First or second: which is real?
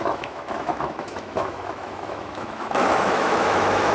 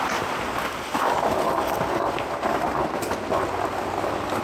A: second